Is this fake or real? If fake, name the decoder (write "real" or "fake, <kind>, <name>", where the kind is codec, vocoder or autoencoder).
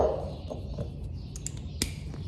real